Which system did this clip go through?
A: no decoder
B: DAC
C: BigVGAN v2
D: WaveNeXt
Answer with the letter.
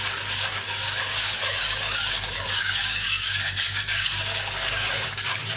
B